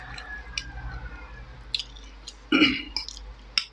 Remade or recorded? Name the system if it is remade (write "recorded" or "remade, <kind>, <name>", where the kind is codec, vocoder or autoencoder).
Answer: recorded